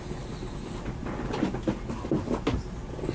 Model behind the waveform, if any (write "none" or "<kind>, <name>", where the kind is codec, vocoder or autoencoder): none